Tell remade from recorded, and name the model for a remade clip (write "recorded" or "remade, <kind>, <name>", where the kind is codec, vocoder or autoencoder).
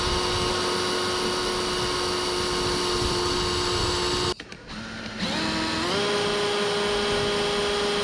recorded